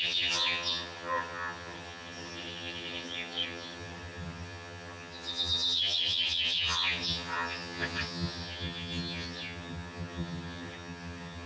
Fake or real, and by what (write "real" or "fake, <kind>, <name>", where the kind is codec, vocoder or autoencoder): fake, vocoder, HiFi-GAN